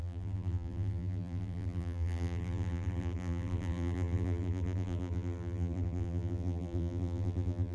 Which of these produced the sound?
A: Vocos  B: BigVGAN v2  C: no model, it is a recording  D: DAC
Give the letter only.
B